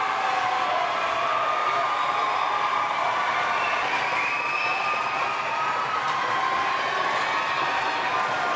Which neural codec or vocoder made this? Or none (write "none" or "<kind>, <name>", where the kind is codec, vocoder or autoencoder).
none